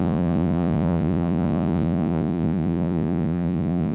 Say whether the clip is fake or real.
fake